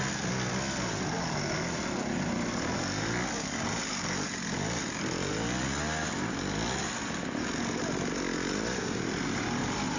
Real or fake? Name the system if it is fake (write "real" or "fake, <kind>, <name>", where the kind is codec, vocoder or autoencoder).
real